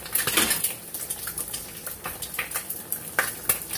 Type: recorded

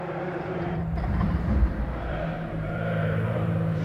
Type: remade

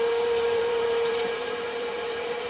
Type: remade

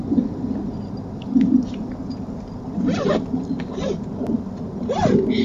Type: recorded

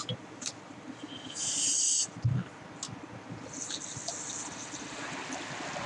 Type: recorded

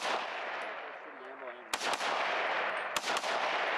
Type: recorded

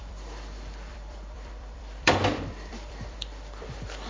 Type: remade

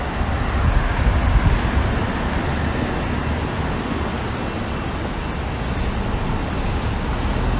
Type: recorded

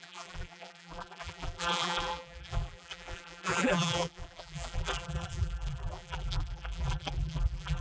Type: remade